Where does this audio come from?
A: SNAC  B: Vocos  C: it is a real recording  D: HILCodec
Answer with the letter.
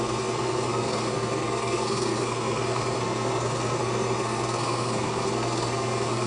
A